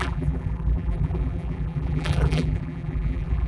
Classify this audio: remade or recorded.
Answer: remade